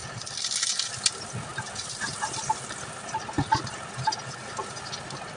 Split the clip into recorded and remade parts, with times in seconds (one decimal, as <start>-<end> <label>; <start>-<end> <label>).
0.0-5.4 recorded